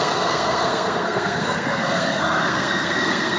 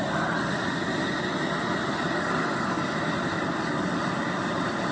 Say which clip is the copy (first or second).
first